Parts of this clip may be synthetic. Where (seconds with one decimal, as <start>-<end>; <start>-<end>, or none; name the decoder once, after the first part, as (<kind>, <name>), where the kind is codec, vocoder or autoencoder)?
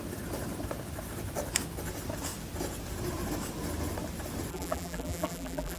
4.5-5.8 (vocoder, BigVGAN v2)